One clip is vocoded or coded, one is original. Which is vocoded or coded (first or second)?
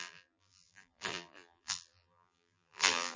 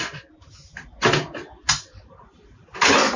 first